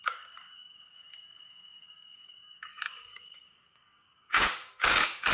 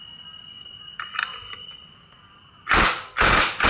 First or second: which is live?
second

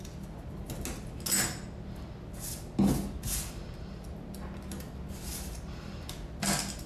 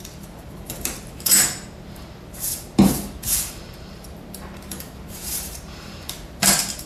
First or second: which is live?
first